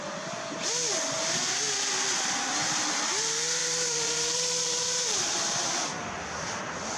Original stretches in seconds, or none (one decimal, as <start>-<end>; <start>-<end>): 0.0-3.6; 5.2-7.0

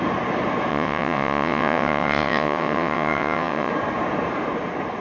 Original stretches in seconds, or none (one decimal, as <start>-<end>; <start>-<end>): 0.0-0.7; 3.7-5.0